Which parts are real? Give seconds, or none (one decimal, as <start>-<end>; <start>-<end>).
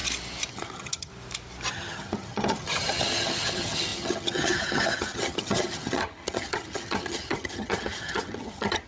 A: 0.0-0.5; 1.1-1.7